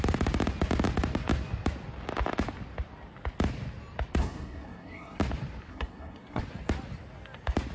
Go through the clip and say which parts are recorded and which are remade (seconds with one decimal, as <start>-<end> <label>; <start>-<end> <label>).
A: 0.0-4.2 recorded; 4.2-5.2 remade; 5.2-5.7 recorded; 5.7-6.4 remade; 6.4-7.7 recorded